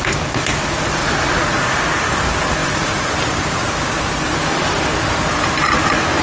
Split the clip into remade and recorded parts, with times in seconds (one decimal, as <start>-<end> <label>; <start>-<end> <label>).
0.0-1.0 recorded; 1.0-1.8 remade; 1.8-2.6 recorded; 2.6-3.1 remade; 3.1-6.2 recorded